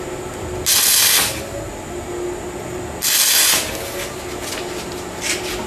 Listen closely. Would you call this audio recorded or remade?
recorded